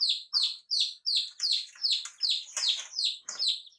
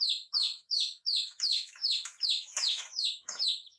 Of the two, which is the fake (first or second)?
second